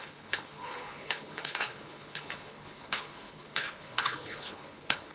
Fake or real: fake